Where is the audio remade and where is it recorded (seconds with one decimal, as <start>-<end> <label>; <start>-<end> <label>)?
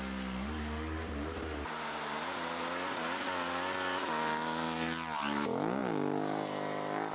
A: 0.0-7.1 recorded